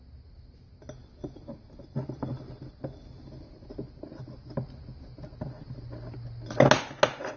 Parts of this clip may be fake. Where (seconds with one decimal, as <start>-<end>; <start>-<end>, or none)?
none